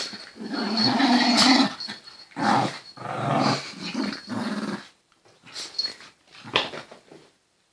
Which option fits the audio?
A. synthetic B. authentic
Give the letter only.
B